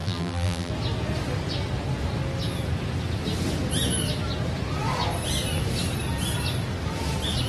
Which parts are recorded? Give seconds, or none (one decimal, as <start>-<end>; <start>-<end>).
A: 0.7-7.5